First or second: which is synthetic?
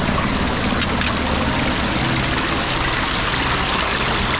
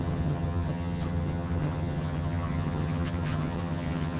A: second